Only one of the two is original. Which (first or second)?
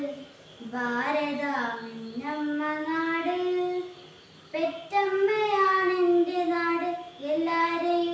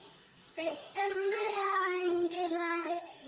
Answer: first